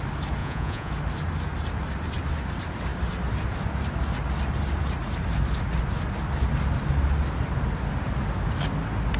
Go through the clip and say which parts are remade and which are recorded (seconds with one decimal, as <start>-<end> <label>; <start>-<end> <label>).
0.0-0.4 recorded; 0.4-0.9 remade; 0.9-9.2 recorded